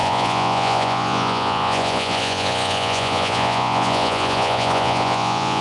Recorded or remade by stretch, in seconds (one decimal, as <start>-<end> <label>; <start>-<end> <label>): 0.0-5.6 remade